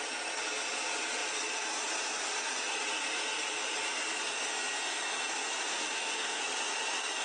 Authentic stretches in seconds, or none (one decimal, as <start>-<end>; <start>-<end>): 0.0-5.7; 6.4-7.2